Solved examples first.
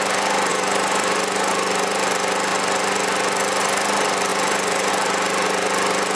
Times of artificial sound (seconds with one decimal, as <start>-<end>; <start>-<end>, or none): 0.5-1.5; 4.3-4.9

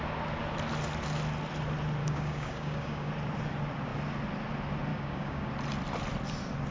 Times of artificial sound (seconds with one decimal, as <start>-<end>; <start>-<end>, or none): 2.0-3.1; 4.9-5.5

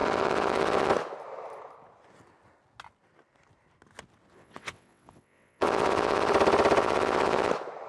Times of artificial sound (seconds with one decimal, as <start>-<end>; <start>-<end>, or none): 0.0-0.9; 4.3-6.3; 6.8-7.5

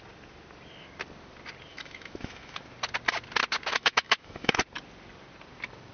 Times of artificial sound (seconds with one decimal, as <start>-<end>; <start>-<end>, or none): 1.7-2.6; 3.7-4.6

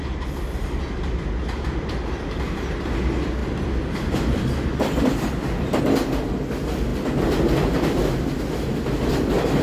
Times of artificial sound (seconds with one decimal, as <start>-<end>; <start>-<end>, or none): 3.4-5.8

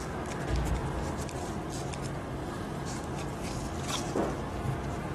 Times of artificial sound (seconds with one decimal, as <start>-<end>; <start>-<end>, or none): 0.8-1.7; 2.4-3.5